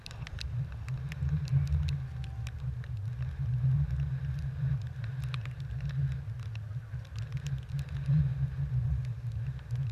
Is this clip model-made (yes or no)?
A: no